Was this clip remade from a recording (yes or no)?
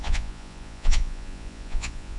yes